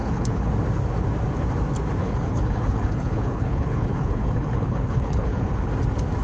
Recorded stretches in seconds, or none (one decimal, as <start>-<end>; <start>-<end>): 0.5-2.0; 5.7-6.2